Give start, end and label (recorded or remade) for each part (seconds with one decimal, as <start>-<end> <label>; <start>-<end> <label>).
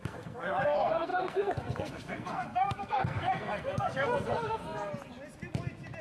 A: 0.0-4.9 remade; 4.9-6.0 recorded